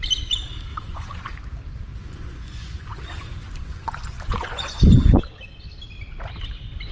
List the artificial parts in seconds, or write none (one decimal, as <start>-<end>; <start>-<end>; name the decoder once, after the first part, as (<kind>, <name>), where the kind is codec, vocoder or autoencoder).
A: 0.7-1.3 (vocoder, Vocos); 1.9-5.2